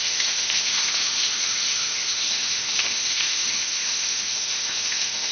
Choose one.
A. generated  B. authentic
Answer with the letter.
A